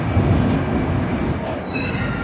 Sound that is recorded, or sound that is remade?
recorded